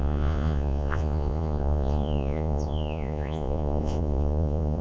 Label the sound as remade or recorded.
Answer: remade